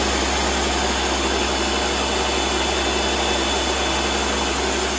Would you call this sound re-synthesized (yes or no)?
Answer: no